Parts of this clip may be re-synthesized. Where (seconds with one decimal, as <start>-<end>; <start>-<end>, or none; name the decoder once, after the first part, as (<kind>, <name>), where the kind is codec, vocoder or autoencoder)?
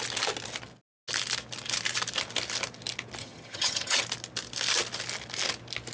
3.2-4.0 (vocoder, HiFi-GAN)